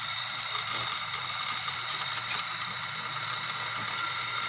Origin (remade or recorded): recorded